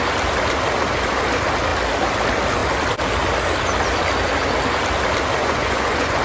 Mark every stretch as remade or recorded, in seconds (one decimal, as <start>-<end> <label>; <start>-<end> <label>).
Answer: 0.0-5.4 recorded; 5.4-6.2 remade

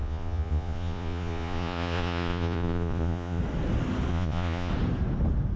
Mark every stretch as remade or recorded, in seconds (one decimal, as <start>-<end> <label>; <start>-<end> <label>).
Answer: 0.0-3.4 remade; 3.4-4.1 recorded; 4.1-4.7 remade; 4.7-5.6 recorded

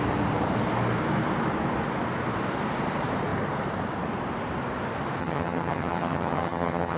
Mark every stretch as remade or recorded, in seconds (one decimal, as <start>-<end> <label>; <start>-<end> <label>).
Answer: 0.0-5.2 recorded; 5.2-7.0 remade